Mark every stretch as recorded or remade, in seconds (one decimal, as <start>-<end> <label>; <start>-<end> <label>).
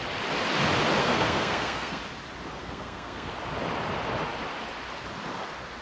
0.0-1.0 recorded; 1.0-2.0 remade; 2.0-2.6 recorded; 2.6-3.3 remade; 3.3-5.8 recorded